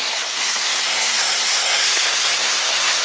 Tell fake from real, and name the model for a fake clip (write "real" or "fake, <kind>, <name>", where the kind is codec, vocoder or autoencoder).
fake, codec, SNAC